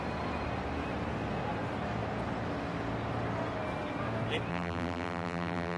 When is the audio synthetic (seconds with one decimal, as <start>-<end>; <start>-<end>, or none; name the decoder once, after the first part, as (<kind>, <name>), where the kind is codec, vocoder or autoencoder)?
4.5-5.8 (vocoder, BigVGAN v2)